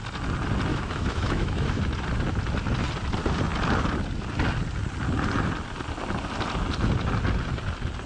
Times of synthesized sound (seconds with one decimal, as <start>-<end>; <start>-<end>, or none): 0.7-1.8